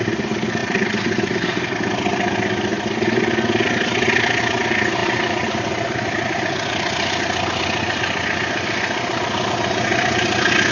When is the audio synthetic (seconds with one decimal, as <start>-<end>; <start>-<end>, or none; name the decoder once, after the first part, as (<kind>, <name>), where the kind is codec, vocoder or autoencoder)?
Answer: 0.6-1.7 (vocoder, BigVGAN v2); 5.0-7.2